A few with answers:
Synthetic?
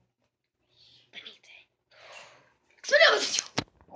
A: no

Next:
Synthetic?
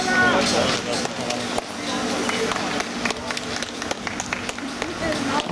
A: no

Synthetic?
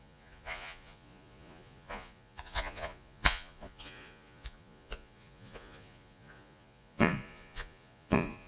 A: yes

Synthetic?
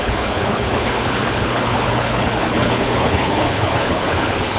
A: yes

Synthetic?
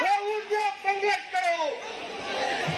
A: yes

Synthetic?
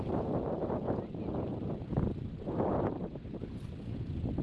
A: no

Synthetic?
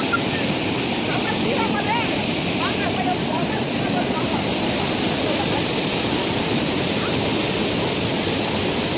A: no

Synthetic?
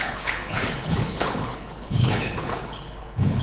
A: yes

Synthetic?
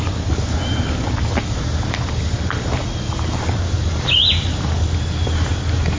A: no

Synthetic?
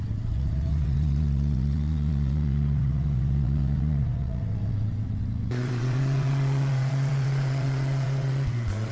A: yes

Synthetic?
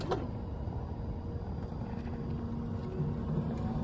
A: no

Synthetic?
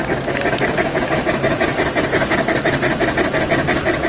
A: no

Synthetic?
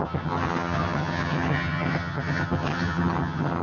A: yes